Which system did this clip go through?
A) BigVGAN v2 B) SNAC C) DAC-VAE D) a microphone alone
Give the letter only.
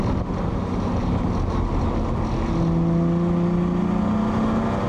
D